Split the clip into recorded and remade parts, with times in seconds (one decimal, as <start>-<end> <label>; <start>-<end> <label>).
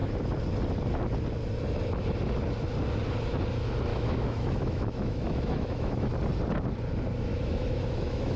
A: 0.0-3.9 recorded; 3.9-6.1 remade; 6.1-7.3 recorded; 7.3-8.4 remade